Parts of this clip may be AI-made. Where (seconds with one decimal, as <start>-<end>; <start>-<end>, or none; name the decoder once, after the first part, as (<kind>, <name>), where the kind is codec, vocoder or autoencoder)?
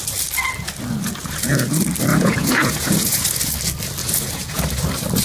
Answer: 2.1-3.4 (vocoder, Vocos); 4.0-4.6